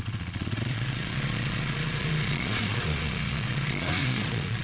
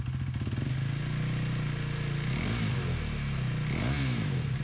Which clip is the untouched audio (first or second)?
second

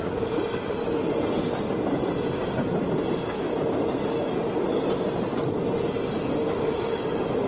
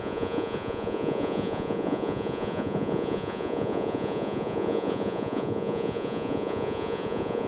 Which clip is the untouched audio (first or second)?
first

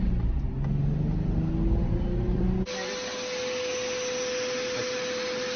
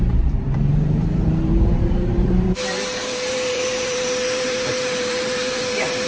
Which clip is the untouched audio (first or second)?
first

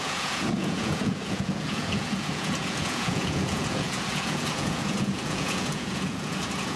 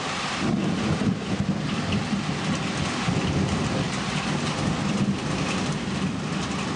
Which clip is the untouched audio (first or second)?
second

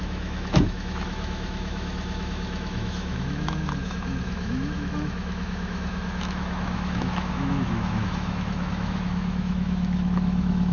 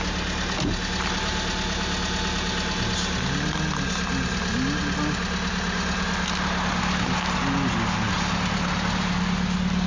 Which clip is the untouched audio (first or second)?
second